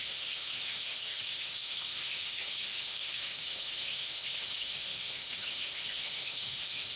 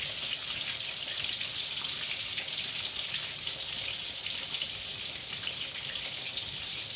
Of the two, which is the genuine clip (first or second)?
second